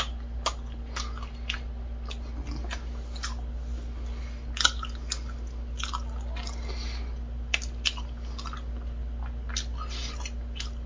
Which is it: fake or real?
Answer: real